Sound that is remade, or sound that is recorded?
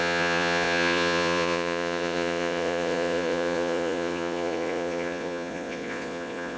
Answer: remade